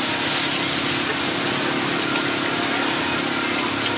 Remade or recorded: recorded